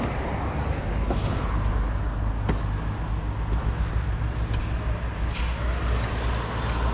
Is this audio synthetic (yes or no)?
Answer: no